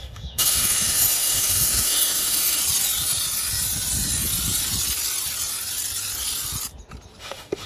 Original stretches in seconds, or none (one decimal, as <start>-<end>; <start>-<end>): 2.6-7.2

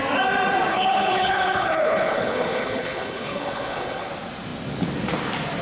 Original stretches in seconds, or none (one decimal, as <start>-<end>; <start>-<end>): 0.0-0.7; 4.1-5.6

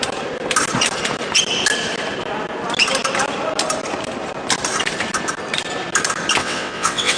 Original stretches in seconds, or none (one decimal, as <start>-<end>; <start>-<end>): 0.0-6.4

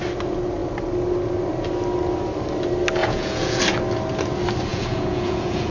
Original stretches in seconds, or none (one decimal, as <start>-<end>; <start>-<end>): 0.0-3.0; 3.6-4.7